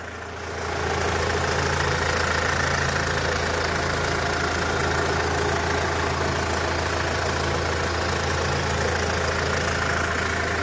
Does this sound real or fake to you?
real